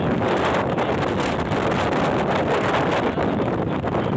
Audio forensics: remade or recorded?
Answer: recorded